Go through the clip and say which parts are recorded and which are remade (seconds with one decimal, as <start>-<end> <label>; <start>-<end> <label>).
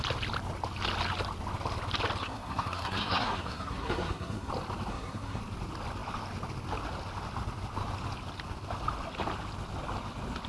0.0-2.2 recorded; 2.2-4.5 remade; 4.5-4.9 recorded; 4.9-5.4 remade; 5.4-10.5 recorded